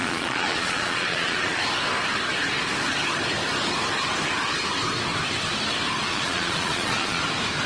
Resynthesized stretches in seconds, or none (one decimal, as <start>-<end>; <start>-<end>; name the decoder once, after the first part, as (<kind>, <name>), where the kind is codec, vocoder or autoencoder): 0.0-1.6 (vocoder, Vocos); 6.1-7.2